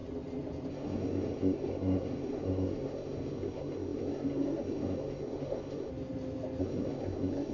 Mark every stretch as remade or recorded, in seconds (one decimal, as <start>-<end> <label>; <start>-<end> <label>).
0.0-0.7 recorded; 0.7-5.9 remade; 5.9-6.6 recorded; 6.6-7.5 remade